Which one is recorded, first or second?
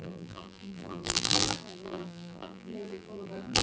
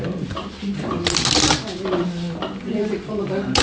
second